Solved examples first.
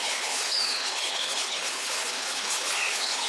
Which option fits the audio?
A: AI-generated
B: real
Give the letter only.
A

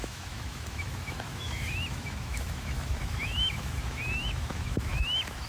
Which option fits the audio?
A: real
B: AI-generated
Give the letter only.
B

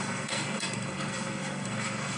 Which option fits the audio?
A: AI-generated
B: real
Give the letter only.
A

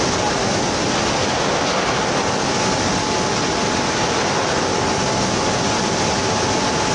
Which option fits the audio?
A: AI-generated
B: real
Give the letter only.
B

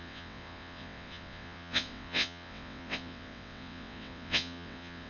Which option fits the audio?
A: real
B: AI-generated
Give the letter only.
B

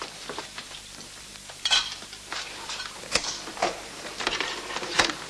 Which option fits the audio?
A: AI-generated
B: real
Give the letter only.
A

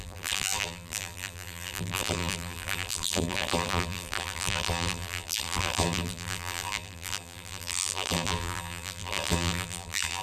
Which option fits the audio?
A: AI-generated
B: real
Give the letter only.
A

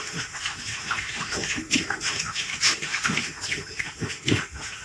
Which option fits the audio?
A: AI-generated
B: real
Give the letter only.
A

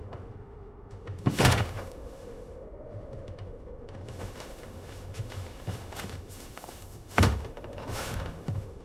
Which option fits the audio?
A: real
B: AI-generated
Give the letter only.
B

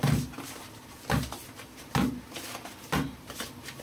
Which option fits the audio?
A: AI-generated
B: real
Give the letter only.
B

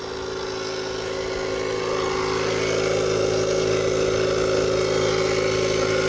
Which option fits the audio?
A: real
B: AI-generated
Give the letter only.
A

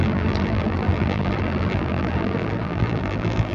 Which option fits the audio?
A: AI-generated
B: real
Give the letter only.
A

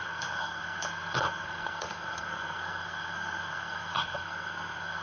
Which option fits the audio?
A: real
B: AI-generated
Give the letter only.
B